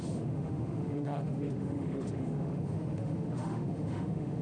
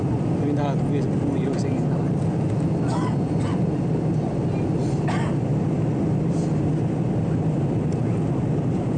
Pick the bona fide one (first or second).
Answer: second